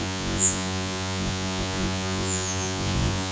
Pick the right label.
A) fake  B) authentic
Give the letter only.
A